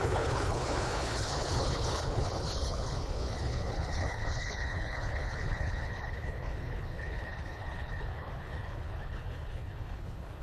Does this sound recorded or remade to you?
remade